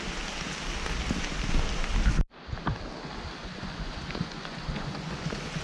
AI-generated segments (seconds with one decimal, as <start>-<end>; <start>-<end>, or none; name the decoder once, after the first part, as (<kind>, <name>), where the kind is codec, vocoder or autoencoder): 3.4-5.6 (vocoder, Vocos)